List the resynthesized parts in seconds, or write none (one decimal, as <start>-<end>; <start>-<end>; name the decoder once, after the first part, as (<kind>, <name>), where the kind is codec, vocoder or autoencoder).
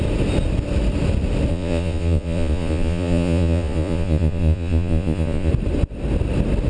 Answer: 1.5-5.5 (vocoder, Vocos)